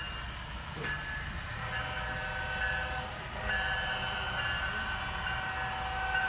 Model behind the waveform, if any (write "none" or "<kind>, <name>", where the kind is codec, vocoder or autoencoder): none